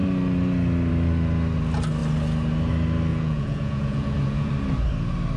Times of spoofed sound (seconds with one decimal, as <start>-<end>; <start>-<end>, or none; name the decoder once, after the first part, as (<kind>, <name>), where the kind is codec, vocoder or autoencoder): 3.1-4.5 (vocoder, Vocos)